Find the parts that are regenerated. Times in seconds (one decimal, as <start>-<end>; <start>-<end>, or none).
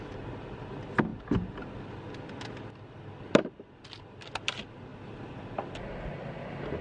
none